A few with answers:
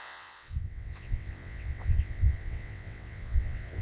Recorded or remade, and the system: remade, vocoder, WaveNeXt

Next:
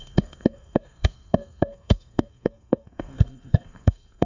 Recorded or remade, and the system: remade, codec, SNAC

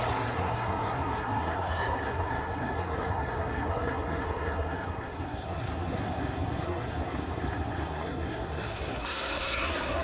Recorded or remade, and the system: remade, codec, SNAC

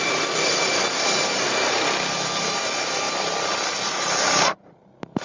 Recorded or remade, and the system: recorded